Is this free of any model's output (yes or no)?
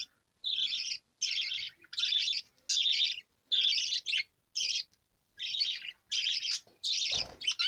yes